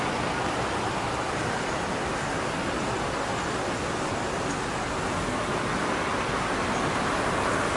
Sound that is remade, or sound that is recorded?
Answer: recorded